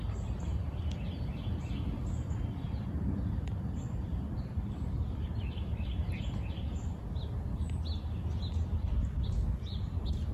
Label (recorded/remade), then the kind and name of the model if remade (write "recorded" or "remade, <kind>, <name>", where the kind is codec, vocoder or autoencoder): recorded